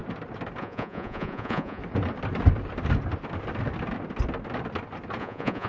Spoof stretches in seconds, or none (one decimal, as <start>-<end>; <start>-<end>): 0.6-1.8; 5.2-5.7